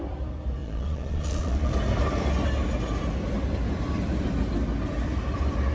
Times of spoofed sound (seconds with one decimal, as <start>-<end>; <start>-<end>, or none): 0.6-1.7